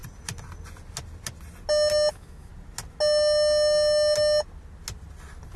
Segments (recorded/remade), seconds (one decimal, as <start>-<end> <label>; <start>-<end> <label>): 0.0-2.1 recorded; 2.1-2.5 remade; 2.5-5.6 recorded